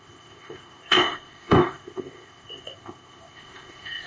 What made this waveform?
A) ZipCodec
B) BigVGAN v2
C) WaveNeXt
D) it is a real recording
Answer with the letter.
A